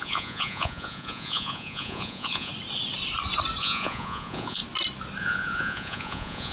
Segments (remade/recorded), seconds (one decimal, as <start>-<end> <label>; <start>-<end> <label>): 0.0-2.5 remade; 2.5-3.6 recorded; 3.6-4.6 remade; 4.6-5.2 recorded; 5.2-6.5 remade